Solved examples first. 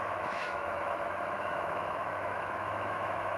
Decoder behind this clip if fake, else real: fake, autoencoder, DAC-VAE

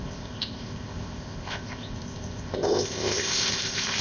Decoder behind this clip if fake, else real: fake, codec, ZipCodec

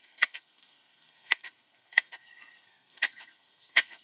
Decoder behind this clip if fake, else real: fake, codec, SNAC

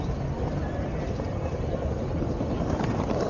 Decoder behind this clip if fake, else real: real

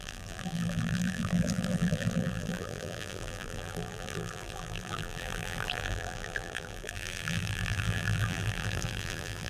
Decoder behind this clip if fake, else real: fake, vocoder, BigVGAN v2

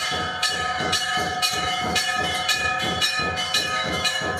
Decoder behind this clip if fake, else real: fake, autoencoder, DAC-VAE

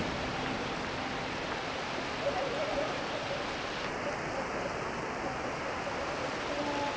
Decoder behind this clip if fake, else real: real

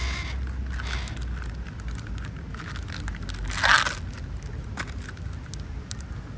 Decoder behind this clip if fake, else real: real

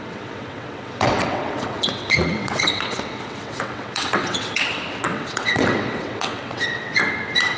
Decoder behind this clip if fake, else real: fake, vocoder, WaveNeXt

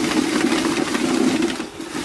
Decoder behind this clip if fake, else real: real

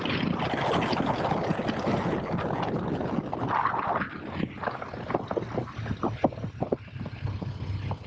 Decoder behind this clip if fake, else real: real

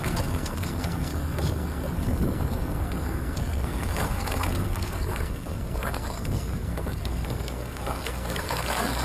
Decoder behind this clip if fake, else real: fake, codec, SNAC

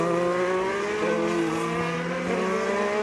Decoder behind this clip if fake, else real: real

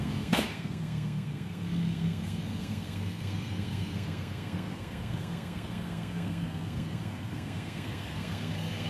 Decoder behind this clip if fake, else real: fake, codec, SNAC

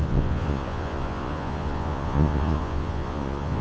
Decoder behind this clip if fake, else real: fake, vocoder, Vocos